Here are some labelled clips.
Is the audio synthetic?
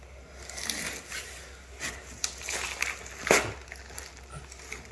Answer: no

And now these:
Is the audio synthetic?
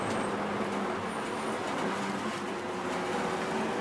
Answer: no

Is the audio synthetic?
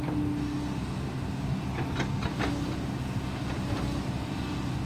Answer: no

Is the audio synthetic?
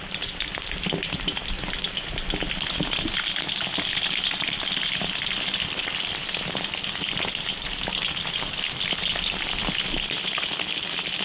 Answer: no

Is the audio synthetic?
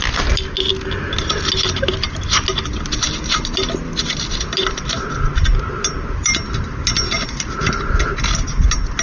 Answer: no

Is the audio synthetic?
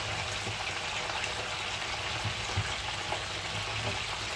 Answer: no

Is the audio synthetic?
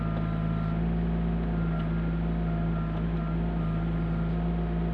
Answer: no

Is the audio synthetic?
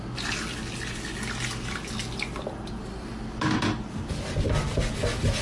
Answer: no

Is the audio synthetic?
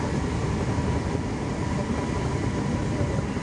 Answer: no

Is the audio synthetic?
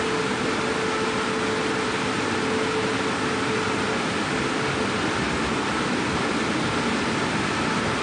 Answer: no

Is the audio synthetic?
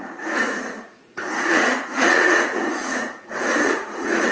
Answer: yes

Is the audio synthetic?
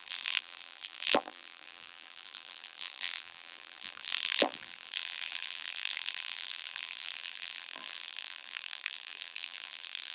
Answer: yes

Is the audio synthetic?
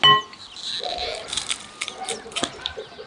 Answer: no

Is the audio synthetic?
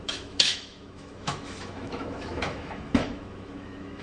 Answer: yes